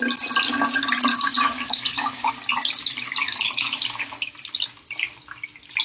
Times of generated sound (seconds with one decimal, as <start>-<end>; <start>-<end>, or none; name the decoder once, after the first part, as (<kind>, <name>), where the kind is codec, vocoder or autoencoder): 1.1-2.3 (autoencoder, DAC-VAE); 3.2-3.8